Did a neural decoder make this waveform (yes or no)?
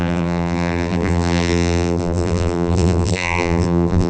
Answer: yes